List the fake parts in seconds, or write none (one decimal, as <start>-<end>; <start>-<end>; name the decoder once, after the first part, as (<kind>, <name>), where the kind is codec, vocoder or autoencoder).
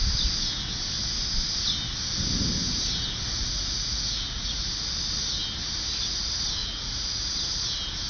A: 3.4-4.8 (vocoder, Vocos); 6.6-7.2